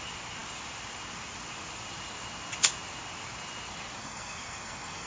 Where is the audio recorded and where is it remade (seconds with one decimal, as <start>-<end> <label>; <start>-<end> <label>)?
0.0-4.0 recorded; 4.0-5.1 remade